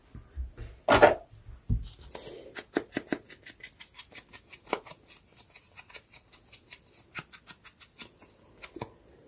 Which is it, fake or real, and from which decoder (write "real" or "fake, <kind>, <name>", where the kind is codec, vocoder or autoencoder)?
real